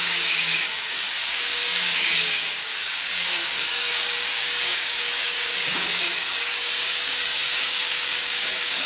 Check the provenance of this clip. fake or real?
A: fake